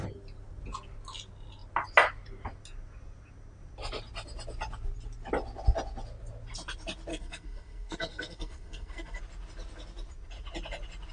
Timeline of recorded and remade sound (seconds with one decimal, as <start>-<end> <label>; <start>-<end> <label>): 0.0-7.1 recorded; 7.1-9.2 remade; 9.2-11.1 recorded